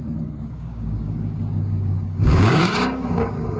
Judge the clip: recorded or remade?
remade